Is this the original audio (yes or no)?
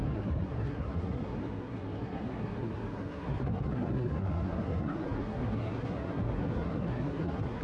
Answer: no